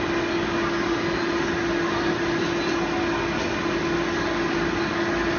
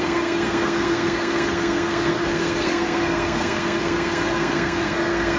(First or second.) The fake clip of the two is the second